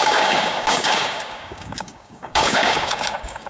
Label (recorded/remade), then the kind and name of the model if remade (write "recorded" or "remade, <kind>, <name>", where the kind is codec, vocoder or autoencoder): remade, codec, DAC